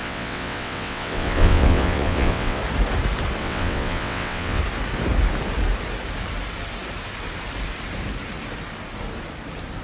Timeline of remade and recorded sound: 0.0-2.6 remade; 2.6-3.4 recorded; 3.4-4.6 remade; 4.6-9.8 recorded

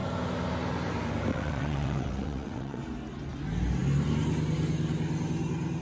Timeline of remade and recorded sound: 0.0-1.3 recorded; 1.3-2.8 remade; 2.8-5.8 recorded